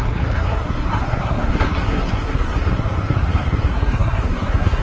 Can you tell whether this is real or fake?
fake